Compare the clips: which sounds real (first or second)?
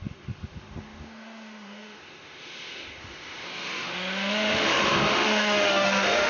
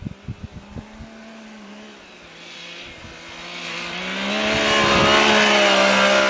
second